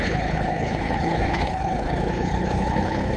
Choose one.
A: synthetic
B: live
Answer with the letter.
A